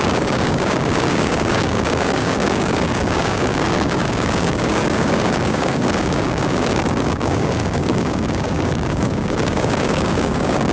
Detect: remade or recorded remade